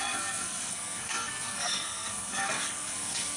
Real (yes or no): no